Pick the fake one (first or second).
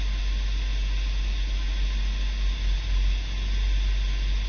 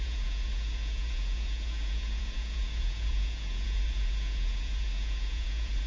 second